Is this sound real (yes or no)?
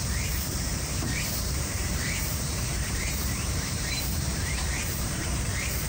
no